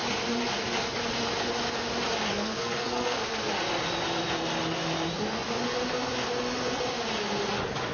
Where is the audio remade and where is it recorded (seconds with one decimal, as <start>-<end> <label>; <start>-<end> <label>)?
0.0-2.3 recorded; 2.3-3.5 remade; 3.5-7.9 recorded